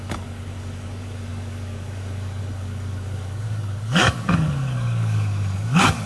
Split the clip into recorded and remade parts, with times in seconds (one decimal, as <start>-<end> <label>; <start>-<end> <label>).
0.0-6.1 remade